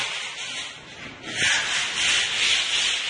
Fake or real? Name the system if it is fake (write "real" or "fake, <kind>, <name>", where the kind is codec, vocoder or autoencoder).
real